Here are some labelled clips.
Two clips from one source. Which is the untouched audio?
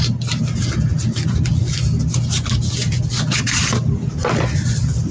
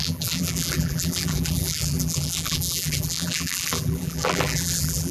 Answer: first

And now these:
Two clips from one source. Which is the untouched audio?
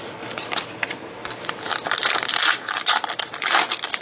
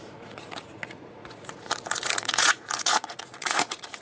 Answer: first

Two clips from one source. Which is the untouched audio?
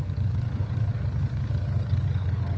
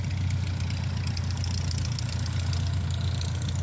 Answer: second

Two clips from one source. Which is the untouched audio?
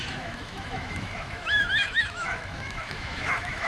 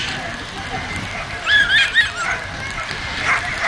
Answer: second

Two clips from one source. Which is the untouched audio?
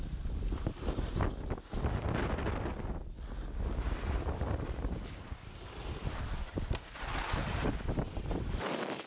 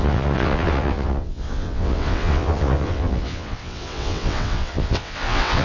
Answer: first